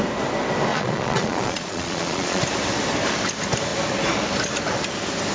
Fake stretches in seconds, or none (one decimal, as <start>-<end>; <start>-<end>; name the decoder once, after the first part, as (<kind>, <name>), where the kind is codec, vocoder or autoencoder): 0.7-2.4 (vocoder, Vocos)